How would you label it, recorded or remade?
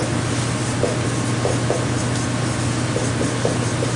recorded